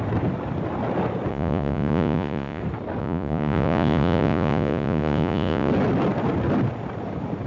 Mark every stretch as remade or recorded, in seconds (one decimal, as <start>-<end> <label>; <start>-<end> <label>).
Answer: 0.0-1.3 recorded; 1.3-2.6 remade; 2.6-3.0 recorded; 3.0-5.7 remade; 5.7-7.5 recorded